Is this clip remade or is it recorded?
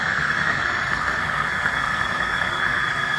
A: remade